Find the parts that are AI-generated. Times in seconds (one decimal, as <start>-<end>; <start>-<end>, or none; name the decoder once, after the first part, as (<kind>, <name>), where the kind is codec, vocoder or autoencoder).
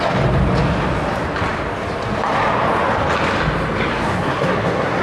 3.9-5.0 (codec, SNAC)